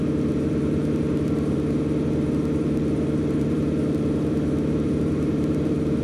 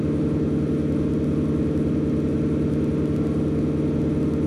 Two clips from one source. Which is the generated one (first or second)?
first